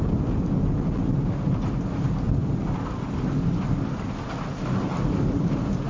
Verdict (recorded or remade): recorded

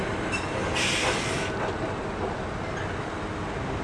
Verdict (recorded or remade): recorded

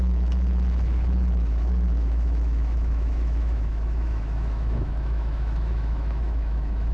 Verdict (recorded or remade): remade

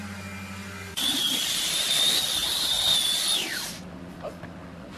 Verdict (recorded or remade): recorded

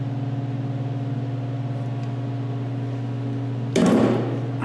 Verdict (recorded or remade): recorded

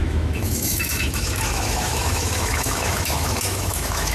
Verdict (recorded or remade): remade